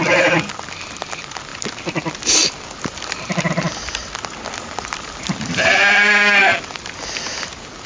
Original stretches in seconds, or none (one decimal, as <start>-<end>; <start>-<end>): 0.0-7.9